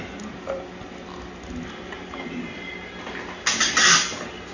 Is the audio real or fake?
real